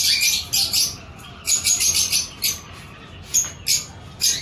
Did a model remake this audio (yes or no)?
no